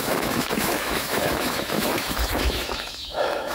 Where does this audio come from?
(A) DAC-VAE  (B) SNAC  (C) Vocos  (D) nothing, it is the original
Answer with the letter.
A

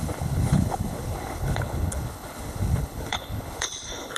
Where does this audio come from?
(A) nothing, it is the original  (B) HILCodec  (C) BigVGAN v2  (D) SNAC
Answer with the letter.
B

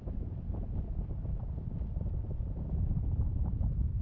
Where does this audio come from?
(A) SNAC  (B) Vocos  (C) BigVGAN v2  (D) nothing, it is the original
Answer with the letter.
D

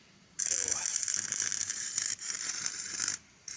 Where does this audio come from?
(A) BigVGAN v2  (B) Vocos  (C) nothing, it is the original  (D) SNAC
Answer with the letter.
A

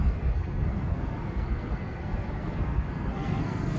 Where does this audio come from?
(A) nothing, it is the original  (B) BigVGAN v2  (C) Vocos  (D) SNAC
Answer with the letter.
D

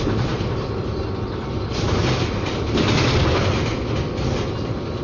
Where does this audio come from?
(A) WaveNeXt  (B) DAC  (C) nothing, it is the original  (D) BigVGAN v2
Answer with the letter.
C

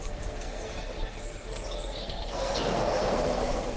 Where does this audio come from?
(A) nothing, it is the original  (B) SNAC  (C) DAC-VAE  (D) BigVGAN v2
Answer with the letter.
B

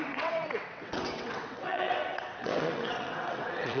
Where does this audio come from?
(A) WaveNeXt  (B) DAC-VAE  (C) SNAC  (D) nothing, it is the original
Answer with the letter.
A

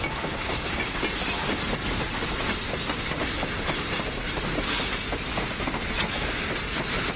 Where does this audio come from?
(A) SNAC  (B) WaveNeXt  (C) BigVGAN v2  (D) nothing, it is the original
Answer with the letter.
D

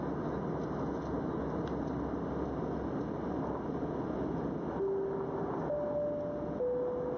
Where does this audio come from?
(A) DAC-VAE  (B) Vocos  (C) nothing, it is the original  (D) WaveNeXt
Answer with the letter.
C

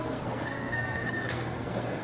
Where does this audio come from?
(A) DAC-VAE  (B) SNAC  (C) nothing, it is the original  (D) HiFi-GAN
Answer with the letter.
B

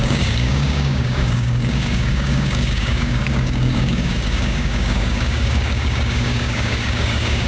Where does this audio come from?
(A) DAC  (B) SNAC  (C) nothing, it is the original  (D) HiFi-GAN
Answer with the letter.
A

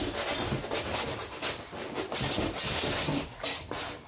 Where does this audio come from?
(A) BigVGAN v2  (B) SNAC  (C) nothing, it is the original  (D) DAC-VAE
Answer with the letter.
C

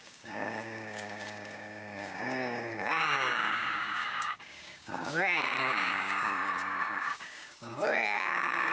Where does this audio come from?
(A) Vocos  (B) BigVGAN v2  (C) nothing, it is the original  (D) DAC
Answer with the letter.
D